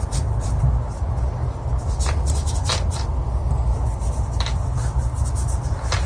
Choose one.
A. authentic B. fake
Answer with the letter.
A